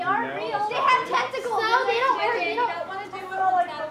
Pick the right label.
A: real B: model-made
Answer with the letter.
A